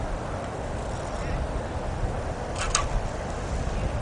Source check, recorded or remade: recorded